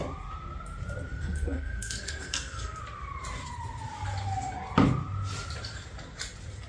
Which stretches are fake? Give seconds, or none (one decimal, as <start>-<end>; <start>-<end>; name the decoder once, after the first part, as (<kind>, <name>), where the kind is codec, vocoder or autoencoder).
1.1-2.8 (codec, SNAC)